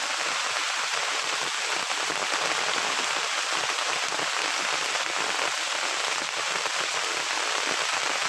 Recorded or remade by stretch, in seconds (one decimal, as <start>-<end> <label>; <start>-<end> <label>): 0.0-2.2 remade; 2.2-6.2 recorded; 6.2-6.9 remade; 6.9-7.8 recorded; 7.8-8.3 remade